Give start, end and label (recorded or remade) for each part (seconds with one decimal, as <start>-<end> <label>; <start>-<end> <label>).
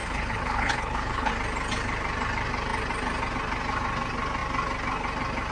0.0-1.3 remade; 1.3-5.5 recorded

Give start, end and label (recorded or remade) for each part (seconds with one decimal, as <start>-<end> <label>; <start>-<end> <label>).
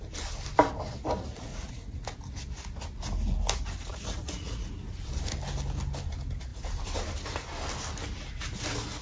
0.0-1.5 recorded; 1.5-2.0 remade; 2.0-3.9 recorded; 3.9-4.7 remade; 4.7-9.0 recorded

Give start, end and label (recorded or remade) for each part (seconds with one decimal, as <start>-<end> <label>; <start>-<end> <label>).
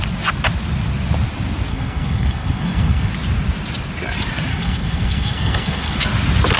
0.0-1.7 recorded; 1.7-3.1 remade; 3.1-4.5 recorded; 4.5-6.0 remade; 6.0-6.6 recorded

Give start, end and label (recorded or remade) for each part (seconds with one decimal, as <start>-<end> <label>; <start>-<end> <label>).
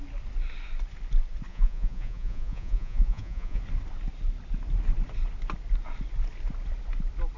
0.0-1.5 recorded; 1.5-3.6 remade; 3.6-7.4 recorded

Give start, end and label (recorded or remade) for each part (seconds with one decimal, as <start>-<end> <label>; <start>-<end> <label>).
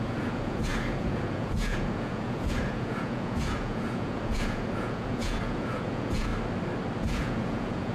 0.0-6.3 remade; 6.3-7.0 recorded; 7.0-7.9 remade